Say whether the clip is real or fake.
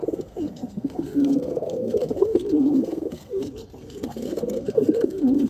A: fake